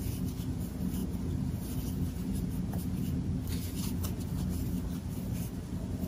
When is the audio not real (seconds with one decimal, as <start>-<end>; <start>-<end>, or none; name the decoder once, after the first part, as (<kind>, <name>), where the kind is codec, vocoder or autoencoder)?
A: none